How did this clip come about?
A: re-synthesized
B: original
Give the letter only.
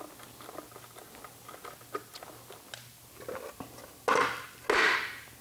B